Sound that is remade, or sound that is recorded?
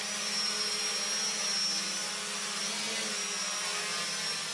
recorded